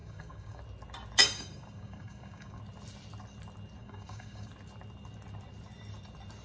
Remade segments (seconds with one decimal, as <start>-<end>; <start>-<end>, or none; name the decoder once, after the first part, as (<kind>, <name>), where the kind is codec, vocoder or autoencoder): 0.0-0.6 (codec, DAC); 1.2-2.6; 3.8-4.5